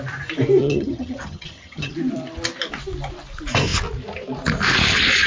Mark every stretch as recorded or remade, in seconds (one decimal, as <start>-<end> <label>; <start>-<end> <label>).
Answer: 0.0-0.6 recorded; 0.6-1.9 remade; 1.9-5.3 recorded